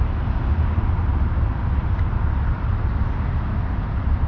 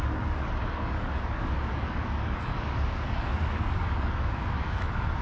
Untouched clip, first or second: first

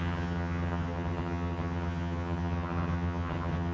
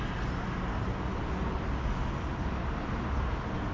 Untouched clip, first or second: second